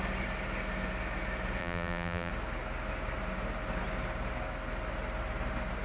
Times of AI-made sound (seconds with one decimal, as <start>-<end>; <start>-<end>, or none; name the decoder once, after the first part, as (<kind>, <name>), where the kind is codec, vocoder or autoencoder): 1.6-2.3 (vocoder, BigVGAN v2)